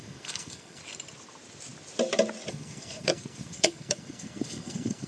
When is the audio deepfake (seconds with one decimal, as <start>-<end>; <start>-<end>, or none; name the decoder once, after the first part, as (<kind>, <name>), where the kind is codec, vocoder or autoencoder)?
0.0-0.8 (codec, SNAC); 2.5-5.1

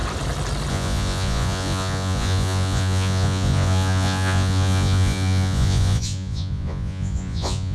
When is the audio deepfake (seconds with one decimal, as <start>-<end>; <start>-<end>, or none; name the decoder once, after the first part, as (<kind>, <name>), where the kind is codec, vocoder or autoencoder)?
0.7-7.7 (vocoder, Vocos)

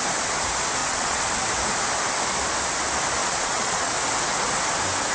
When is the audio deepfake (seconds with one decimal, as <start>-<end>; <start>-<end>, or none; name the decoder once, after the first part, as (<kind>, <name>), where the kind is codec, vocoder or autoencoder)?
0.8-1.3 (vocoder, Vocos); 3.2-3.9